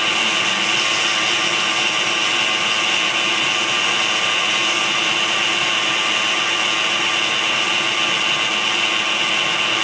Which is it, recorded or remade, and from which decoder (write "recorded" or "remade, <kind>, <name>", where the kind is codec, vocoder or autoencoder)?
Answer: recorded